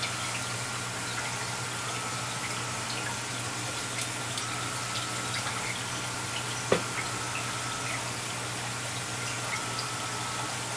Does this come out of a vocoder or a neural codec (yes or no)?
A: no